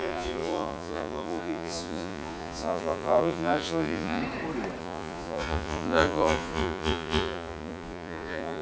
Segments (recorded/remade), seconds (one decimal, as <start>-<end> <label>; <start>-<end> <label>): 0.0-4.2 remade; 4.2-4.8 recorded; 4.8-8.6 remade

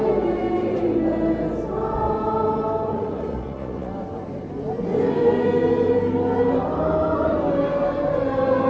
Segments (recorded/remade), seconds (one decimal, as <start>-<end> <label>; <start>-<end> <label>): 0.0-2.9 recorded; 2.9-3.9 remade; 3.9-8.7 recorded

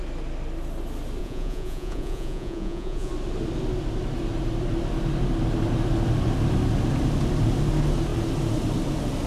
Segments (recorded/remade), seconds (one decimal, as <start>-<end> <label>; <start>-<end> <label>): 0.0-1.2 recorded; 1.2-3.1 remade; 3.1-9.3 recorded

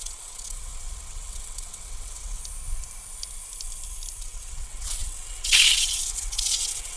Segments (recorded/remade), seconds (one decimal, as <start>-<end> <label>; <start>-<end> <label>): 0.0-2.4 remade; 2.4-4.2 recorded; 4.2-7.0 remade

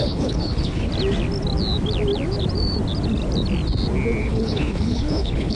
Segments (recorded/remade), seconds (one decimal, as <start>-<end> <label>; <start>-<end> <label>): 0.0-0.9 remade; 0.9-4.2 recorded; 4.2-5.5 remade

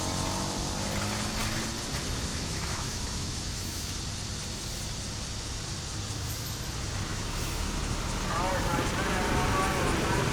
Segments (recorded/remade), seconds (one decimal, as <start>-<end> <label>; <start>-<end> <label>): 0.0-2.3 recorded; 2.3-4.0 remade; 4.0-7.1 recorded; 7.1-7.8 remade; 7.8-10.3 recorded

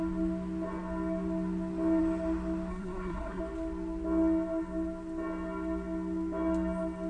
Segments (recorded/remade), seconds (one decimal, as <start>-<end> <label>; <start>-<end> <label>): 0.0-2.7 recorded; 2.7-3.4 remade; 3.4-7.1 recorded